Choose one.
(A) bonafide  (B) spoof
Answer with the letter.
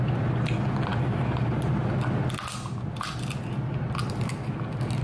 A